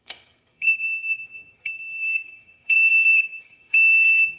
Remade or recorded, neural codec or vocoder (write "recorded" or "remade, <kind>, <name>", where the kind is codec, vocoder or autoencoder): remade, codec, SNAC